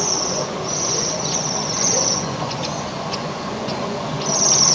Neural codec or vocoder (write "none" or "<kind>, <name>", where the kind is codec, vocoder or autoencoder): vocoder, Vocos